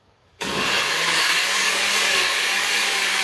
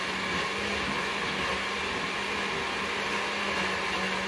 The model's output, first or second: first